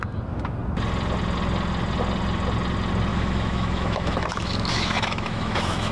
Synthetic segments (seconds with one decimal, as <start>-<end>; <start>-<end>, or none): 3.1-5.9